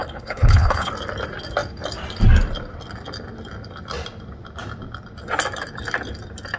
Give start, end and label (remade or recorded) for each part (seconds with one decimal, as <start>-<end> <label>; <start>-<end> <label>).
0.0-0.9 remade; 0.9-6.6 recorded